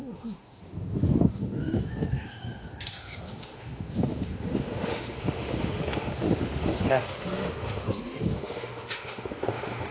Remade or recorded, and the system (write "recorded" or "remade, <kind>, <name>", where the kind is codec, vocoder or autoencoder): remade, autoencoder, DAC-VAE